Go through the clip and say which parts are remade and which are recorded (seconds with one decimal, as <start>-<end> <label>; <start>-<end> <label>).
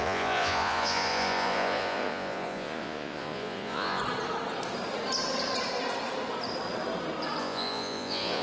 0.0-4.0 remade; 4.0-7.4 recorded; 7.4-8.4 remade